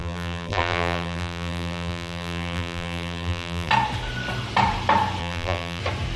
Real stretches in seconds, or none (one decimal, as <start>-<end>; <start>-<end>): 3.7-5.2; 5.8-6.2